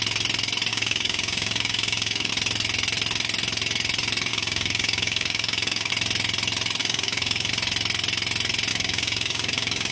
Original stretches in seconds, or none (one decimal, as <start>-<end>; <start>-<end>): 0.0-0.7; 2.3-4.3; 5.9-6.8; 7.5-8.7